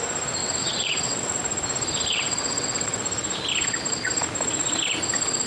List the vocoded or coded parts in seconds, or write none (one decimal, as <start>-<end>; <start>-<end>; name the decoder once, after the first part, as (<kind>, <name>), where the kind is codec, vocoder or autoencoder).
0.4-1.4 (vocoder, WaveNeXt); 2.1-3.0